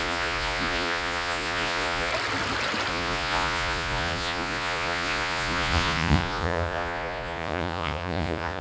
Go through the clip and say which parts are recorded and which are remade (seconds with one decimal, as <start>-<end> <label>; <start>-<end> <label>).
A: 0.0-2.1 remade; 2.1-2.9 recorded; 2.9-8.6 remade